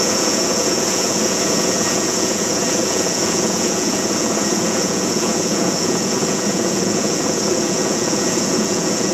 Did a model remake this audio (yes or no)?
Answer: yes